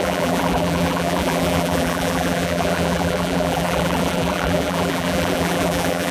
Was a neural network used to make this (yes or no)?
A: yes